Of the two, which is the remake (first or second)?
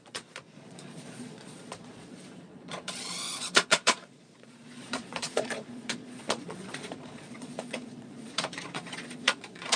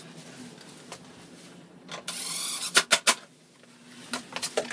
first